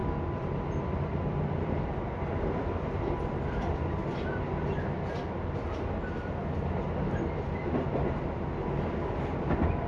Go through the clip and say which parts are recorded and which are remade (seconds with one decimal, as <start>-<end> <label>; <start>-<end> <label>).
0.0-4.1 remade; 4.1-9.9 recorded